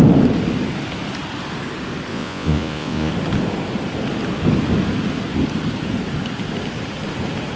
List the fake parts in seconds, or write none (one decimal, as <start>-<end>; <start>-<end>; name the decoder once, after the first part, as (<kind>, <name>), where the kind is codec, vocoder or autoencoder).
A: 2.1-3.1 (vocoder, Vocos)